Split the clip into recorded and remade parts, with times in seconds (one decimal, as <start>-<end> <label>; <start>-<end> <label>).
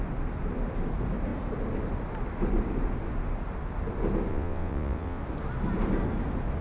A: 0.0-4.3 recorded; 4.3-5.2 remade; 5.2-6.6 recorded